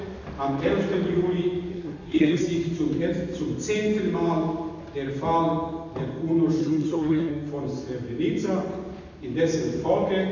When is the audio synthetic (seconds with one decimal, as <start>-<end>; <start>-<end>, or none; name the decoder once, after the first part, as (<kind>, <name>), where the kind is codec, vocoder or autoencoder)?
1.7-2.4 (codec, SNAC); 6.6-7.3